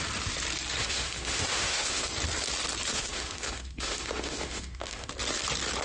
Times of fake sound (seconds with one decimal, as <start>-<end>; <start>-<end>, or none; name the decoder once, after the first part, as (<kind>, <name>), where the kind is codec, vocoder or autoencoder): 0.8-2.1 (autoencoder, DAC-VAE); 2.9-5.1